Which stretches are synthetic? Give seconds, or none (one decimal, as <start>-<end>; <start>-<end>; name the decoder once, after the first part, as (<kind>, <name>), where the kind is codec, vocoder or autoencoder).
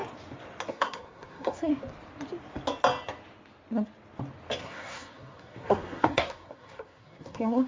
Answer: 0.7-1.7 (codec, SNAC); 4.6-7.7